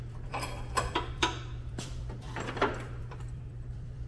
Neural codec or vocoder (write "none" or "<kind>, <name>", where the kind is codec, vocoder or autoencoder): vocoder, BigVGAN v2